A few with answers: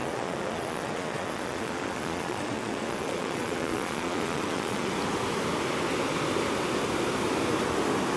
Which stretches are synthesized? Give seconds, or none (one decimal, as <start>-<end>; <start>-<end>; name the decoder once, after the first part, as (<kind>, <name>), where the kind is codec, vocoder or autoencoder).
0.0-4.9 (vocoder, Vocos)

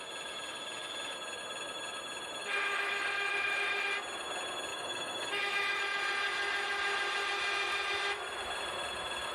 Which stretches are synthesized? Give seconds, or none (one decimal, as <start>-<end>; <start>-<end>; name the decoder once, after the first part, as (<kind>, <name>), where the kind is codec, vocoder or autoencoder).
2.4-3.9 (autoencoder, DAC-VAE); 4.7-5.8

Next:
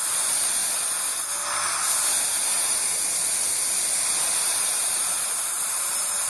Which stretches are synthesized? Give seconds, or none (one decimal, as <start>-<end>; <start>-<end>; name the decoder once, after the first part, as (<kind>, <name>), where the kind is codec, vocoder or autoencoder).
0.0-0.6 (vocoder, BigVGAN v2); 4.4-6.3

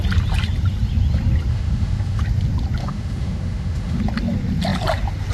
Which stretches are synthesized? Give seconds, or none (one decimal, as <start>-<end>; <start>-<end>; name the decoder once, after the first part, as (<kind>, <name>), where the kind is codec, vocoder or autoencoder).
1.5-2.2 (autoencoder, DAC-VAE); 2.8-4.0

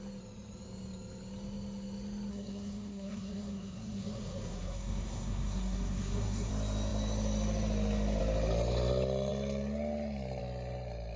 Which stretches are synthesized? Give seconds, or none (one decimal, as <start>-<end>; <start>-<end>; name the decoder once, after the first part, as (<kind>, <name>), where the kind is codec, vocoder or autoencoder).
2.3-6.5 (codec, SNAC)

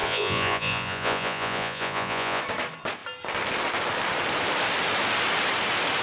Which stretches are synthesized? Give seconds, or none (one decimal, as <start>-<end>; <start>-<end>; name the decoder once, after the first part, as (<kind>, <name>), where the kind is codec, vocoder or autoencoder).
0.0-2.4 (vocoder, Vocos)